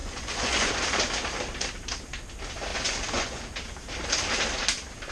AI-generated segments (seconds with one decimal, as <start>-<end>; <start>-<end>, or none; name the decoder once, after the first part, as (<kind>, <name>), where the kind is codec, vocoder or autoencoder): 0.0-0.7 (vocoder, Vocos); 2.7-3.4